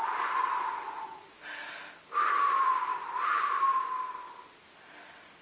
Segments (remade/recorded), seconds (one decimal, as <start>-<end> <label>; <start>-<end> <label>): 0.0-2.9 recorded; 2.9-3.5 remade; 3.5-5.4 recorded